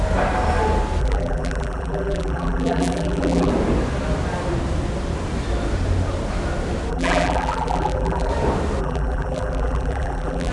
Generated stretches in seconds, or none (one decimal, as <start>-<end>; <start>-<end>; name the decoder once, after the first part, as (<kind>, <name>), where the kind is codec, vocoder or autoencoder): 1.0-3.5 (vocoder, BigVGAN v2); 6.9-8.3; 8.8-10.5